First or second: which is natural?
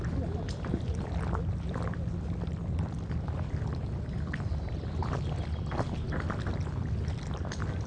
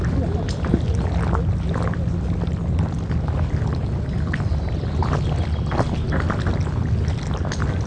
second